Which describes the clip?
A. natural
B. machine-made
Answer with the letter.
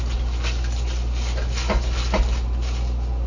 A